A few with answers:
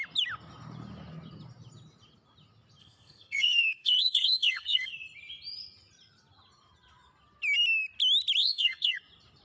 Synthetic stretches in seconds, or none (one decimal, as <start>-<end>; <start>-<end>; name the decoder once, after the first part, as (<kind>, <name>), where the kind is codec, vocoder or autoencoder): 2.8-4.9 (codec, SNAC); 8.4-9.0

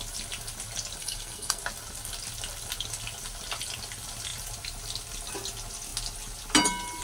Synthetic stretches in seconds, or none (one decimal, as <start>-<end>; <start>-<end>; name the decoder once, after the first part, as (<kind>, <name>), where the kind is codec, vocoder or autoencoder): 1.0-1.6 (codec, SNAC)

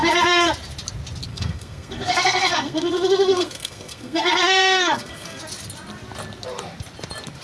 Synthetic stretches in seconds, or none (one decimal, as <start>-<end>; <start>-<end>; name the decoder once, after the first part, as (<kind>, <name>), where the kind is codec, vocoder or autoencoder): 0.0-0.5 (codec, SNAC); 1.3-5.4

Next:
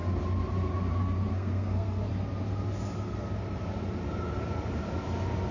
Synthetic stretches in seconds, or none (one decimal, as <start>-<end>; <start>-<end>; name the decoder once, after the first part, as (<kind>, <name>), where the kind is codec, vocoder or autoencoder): 1.3-2.1 (codec, SNAC)

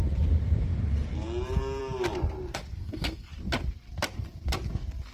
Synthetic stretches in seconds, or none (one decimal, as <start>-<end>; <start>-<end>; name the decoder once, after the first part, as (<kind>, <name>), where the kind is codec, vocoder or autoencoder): 2.8-3.3 (codec, SNAC)

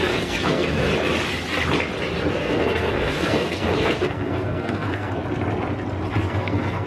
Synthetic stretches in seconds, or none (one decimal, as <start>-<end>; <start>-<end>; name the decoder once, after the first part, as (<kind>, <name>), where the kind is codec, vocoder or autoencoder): 0.0-0.9 (codec, SNAC); 2.3-5.2; 6.2-6.9